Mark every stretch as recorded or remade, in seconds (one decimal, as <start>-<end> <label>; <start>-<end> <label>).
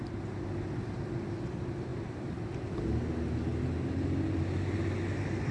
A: 0.0-1.9 recorded; 1.9-2.7 remade; 2.7-5.5 recorded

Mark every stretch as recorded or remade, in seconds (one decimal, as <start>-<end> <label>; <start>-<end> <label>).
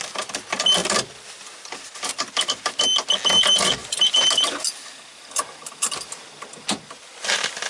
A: 0.0-0.8 recorded; 0.8-2.1 remade; 2.1-3.8 recorded; 3.8-6.1 remade; 6.1-7.7 recorded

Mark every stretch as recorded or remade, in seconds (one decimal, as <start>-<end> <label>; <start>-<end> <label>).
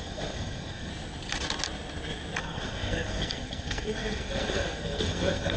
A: 0.0-0.9 remade; 0.9-2.4 recorded; 2.4-5.6 remade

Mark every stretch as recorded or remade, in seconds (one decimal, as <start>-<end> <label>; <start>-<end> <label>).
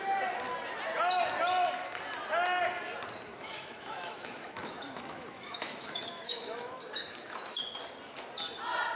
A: 0.0-3.3 recorded; 3.3-7.6 remade; 7.6-9.0 recorded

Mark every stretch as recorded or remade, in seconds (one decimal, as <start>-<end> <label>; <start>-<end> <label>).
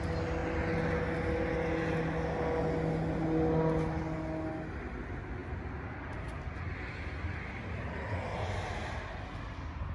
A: 0.0-9.9 recorded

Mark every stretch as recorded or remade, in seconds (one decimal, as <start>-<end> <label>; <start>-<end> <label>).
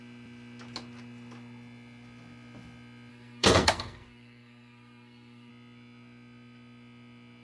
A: 0.0-3.1 recorded; 3.1-5.5 remade; 5.5-7.4 recorded